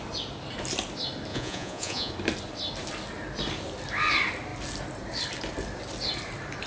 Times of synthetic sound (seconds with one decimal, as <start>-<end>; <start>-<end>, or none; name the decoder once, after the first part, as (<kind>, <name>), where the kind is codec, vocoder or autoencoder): 1.3-2.1 (vocoder, Vocos)

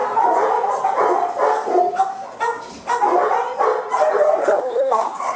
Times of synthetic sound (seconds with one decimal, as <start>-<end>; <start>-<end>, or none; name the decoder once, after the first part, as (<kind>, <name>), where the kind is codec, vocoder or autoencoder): 4.4-5.4 (codec, SNAC)

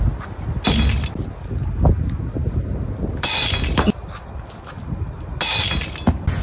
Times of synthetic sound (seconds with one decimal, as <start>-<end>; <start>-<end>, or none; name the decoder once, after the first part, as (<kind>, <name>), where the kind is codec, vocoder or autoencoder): none